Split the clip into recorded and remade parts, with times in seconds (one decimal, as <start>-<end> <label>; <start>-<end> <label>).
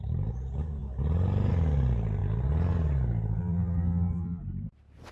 0.0-3.4 recorded; 3.4-4.4 remade; 4.4-5.1 recorded